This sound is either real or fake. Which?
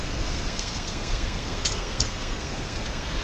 fake